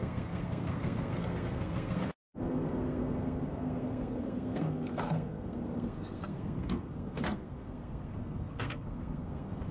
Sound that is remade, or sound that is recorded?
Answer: remade